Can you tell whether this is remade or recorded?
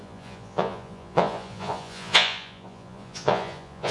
remade